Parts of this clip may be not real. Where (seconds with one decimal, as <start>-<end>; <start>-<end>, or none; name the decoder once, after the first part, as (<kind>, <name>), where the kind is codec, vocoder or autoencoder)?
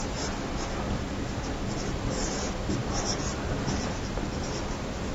none